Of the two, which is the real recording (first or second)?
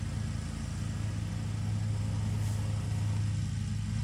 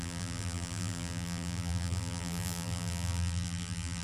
first